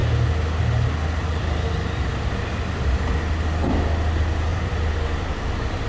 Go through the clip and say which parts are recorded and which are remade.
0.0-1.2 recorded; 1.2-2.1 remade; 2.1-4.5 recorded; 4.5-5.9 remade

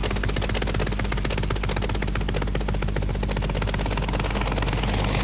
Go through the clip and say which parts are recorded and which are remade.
0.0-5.2 recorded

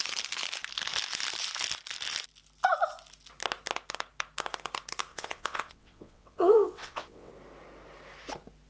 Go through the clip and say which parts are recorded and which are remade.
0.0-5.1 recorded; 5.1-7.3 remade; 7.3-8.7 recorded

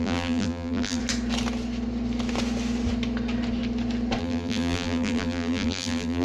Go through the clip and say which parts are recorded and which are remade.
0.0-1.0 remade; 1.0-4.2 recorded; 4.2-6.2 remade

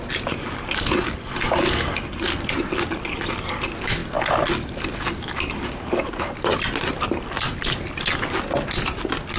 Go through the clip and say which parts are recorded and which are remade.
0.0-9.4 recorded